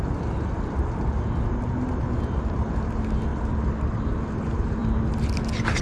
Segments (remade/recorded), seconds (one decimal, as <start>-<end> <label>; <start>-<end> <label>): 0.0-5.8 recorded